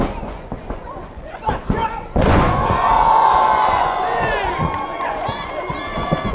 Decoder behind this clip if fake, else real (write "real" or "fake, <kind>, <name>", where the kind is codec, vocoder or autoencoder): fake, vocoder, Vocos